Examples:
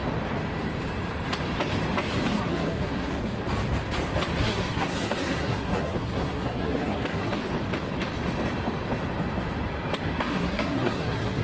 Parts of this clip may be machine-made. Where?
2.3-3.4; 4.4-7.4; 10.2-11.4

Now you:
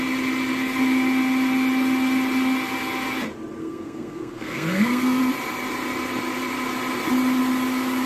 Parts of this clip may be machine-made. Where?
3.6-5.2

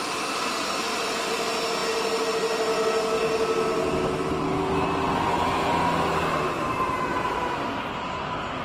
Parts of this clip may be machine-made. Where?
none

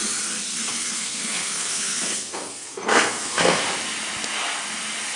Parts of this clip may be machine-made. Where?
0.5-3.6

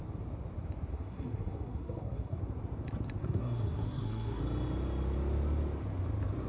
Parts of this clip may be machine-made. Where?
0.9-2.4; 3.2-4.4